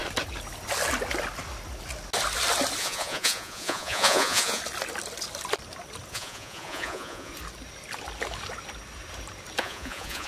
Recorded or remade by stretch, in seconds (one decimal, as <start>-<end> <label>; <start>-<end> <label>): 0.0-2.8 recorded; 2.8-4.6 remade; 4.6-6.1 recorded; 6.1-7.3 remade; 7.3-9.6 recorded; 9.6-10.3 remade